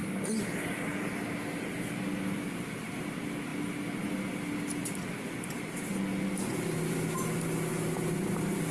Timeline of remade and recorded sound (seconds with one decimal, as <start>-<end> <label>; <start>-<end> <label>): 0.0-8.7 recorded